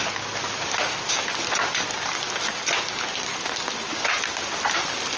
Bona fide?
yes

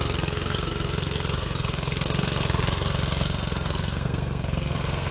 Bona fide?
no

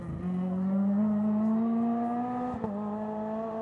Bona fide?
yes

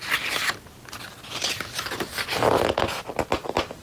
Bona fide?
yes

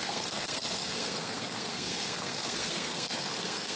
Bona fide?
no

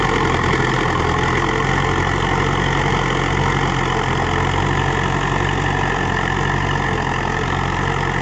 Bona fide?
yes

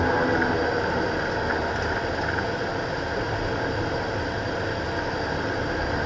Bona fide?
yes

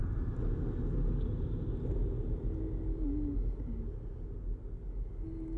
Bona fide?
yes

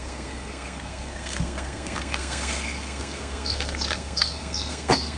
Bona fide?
no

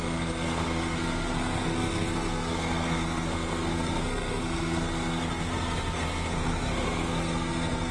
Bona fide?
no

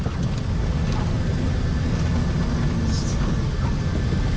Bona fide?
yes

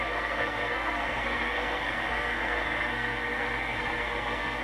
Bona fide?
no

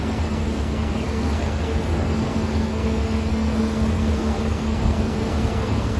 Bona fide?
no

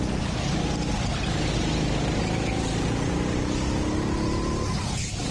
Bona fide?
yes